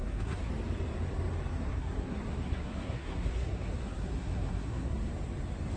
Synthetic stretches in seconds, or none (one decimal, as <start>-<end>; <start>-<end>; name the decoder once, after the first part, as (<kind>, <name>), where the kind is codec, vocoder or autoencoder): 0.0-0.5 (codec, SNAC); 1.6-5.1